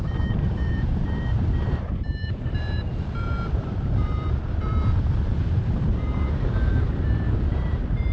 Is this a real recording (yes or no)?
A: no